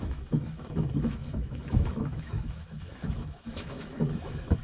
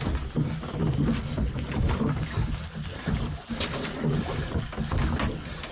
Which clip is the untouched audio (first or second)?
second